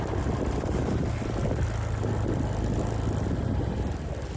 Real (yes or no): yes